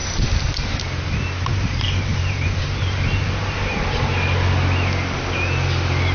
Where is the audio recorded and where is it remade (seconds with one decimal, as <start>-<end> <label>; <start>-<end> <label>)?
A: 0.0-1.5 recorded; 1.5-4.0 remade; 4.0-6.1 recorded